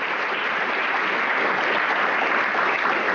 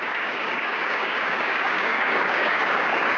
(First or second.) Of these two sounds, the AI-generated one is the second